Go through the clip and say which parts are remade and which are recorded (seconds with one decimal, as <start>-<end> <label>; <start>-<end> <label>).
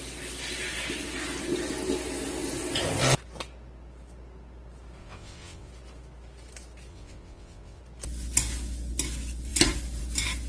0.0-5.0 recorded; 5.0-5.7 remade; 5.7-6.9 recorded; 6.9-7.8 remade; 7.8-10.5 recorded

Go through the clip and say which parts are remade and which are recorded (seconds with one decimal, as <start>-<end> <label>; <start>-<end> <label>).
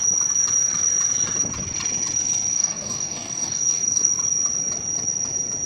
0.0-2.5 recorded; 2.5-4.1 remade; 4.1-5.7 recorded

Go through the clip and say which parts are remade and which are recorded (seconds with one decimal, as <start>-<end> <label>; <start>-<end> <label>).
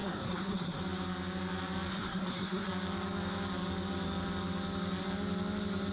0.0-0.8 remade; 0.8-1.9 recorded; 1.9-2.7 remade; 2.7-5.9 recorded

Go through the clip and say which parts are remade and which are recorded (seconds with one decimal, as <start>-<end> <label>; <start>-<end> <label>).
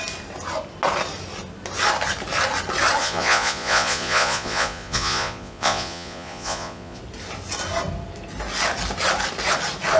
0.0-3.0 recorded; 3.0-7.0 remade; 7.0-10.0 recorded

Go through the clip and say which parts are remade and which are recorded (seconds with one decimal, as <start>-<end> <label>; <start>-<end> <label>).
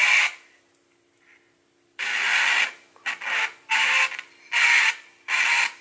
0.0-5.8 recorded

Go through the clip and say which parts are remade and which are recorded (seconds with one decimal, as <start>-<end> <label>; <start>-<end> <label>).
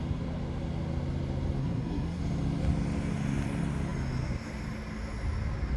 0.0-1.6 recorded; 1.6-2.2 remade; 2.2-5.8 recorded